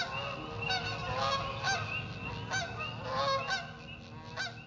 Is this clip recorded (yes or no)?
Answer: yes